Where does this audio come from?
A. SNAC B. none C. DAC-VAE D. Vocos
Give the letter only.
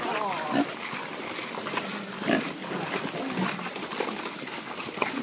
B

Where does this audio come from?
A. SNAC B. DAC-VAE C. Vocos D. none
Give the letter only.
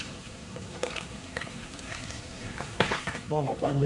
A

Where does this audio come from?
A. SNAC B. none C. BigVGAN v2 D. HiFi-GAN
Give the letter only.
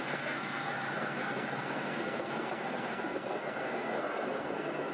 A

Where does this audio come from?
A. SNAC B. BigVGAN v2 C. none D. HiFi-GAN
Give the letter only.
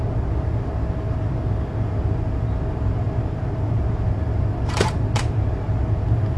C